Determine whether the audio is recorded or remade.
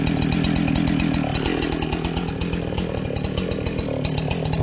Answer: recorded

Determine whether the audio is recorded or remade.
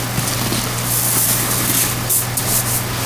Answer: recorded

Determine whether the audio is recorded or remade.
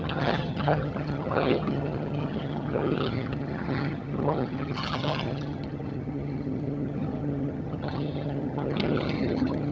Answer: remade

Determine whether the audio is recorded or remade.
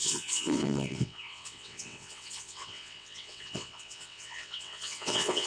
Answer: remade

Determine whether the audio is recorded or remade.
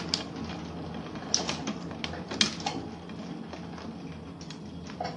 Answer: recorded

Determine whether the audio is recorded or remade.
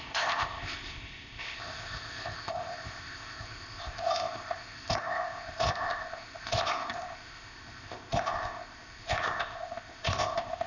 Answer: remade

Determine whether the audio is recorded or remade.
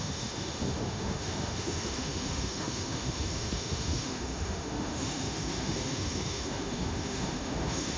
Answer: remade